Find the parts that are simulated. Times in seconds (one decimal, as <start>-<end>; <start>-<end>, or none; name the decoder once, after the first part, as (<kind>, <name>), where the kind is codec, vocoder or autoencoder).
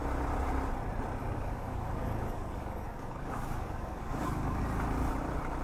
1.2-4.6 (codec, DAC)